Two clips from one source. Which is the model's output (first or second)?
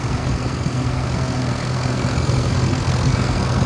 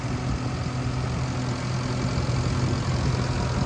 first